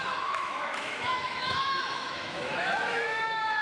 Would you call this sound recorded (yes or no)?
no